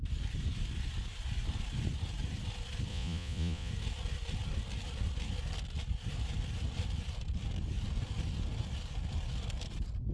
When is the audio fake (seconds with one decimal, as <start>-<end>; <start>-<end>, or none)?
2.9-3.7